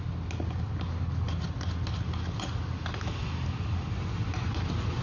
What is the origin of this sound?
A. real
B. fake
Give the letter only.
A